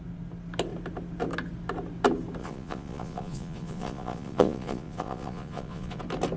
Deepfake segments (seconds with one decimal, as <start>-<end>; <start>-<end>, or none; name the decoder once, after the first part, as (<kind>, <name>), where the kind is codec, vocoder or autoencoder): 2.4-6.0 (vocoder, Vocos)